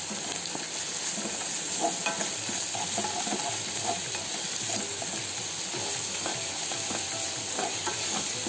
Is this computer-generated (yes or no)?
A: no